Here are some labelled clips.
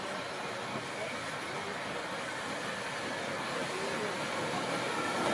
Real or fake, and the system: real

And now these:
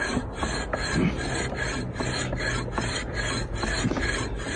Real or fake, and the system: real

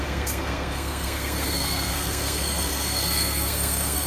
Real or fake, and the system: fake, codec, SNAC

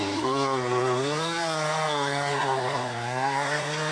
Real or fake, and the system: fake, codec, SNAC